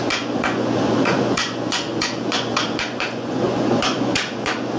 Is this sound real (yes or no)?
no